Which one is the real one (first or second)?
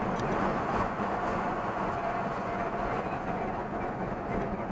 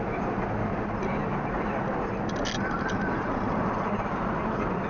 second